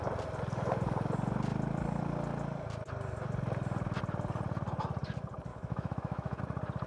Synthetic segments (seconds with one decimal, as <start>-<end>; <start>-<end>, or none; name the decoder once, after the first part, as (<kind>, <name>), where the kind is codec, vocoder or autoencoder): 5.5-6.4 (autoencoder, DAC-VAE)